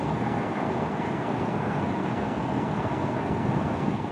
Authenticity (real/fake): fake